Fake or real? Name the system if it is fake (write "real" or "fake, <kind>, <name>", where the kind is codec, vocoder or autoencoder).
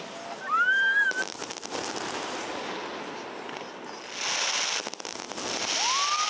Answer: real